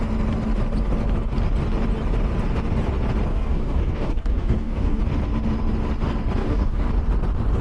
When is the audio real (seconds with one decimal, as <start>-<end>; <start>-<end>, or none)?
0.0-3.3; 5.0-6.4; 6.9-7.6